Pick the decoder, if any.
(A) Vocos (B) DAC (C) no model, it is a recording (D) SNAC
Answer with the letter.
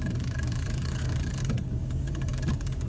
B